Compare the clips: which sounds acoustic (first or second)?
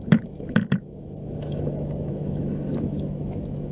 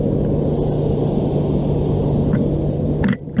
second